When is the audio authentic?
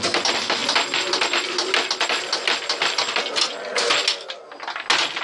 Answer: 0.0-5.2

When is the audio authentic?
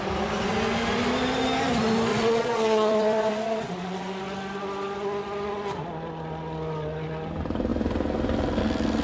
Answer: 0.0-2.1; 4.2-9.0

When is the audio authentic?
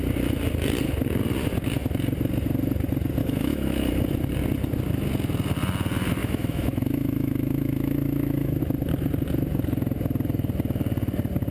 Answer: 0.0-3.2; 3.9-6.2; 8.6-11.5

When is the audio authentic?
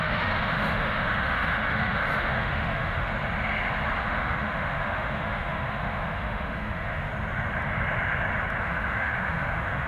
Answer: 3.1-4.0; 7.1-8.6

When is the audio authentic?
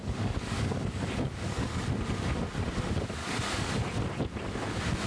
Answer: 1.9-3.2; 3.8-5.1